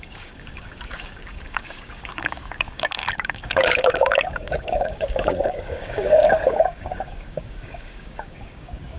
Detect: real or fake fake